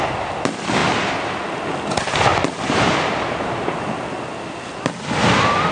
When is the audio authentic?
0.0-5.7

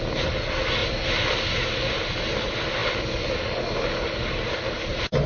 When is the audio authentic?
0.0-5.3